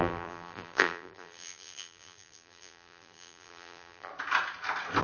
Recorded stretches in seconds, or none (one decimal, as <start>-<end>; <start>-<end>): 4.1-5.0